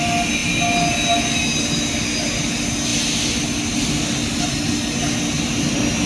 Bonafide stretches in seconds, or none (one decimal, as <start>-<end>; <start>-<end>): 0.0-6.1

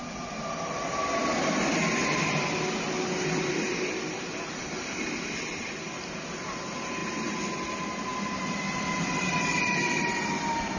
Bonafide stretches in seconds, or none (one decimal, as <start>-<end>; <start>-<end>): 0.0-10.8

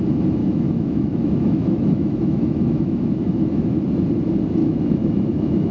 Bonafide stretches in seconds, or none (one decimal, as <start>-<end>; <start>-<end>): 0.0-0.4; 3.8-4.6

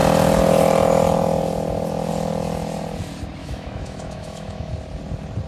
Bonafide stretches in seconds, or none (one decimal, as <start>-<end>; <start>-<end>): 0.0-3.4; 4.7-5.5

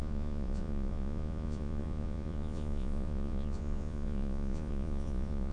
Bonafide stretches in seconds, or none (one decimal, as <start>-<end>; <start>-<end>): none

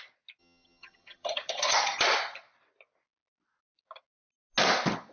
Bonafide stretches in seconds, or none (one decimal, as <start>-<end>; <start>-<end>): 0.0-0.4; 2.0-5.1

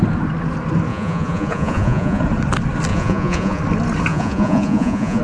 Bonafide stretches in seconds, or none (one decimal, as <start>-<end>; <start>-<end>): 0.0-0.9; 2.2-2.9; 3.6-4.1